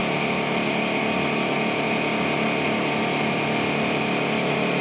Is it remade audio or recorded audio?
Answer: recorded